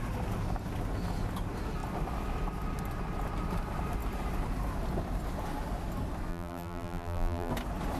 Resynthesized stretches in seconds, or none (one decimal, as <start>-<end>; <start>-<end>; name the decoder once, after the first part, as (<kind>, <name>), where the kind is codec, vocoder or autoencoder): 6.3-7.5 (vocoder, BigVGAN v2)